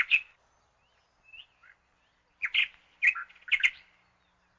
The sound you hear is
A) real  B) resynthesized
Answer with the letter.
A